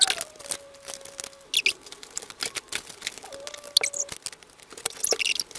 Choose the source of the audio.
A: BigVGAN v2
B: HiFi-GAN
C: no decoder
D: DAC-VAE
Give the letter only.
C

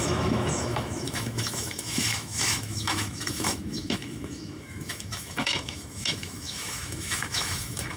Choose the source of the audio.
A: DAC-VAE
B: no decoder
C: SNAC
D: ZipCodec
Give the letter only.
A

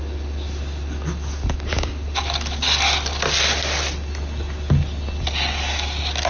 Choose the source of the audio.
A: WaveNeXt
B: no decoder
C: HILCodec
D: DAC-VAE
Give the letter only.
B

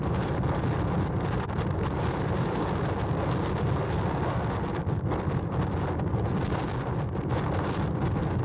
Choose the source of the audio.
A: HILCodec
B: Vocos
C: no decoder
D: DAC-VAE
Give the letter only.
C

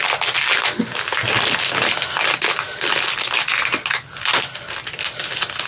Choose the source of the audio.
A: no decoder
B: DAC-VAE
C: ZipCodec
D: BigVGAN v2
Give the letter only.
A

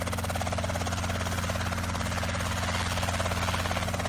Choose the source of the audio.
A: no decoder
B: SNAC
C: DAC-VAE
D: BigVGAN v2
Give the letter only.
A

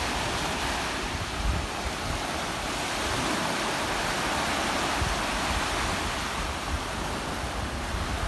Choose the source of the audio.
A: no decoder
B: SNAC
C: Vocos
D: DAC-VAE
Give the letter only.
A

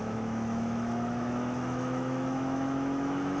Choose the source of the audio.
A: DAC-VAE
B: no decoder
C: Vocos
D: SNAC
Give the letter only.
A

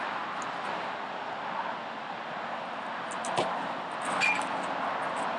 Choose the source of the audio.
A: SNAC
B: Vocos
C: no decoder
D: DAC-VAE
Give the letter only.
C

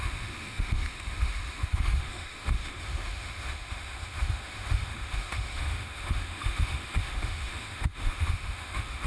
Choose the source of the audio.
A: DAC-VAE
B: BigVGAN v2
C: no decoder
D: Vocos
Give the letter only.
A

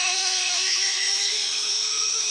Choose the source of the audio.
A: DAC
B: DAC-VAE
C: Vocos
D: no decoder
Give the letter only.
B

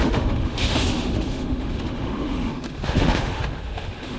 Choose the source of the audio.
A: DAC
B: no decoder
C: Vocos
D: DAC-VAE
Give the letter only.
D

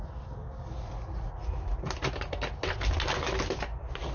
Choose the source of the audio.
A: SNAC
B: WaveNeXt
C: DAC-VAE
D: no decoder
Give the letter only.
D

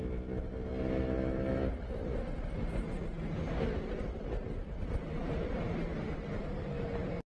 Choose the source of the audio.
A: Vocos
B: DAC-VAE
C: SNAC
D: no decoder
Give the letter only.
D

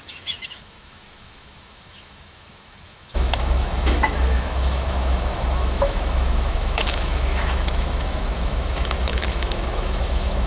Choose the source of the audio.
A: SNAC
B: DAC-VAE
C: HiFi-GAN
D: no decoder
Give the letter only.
B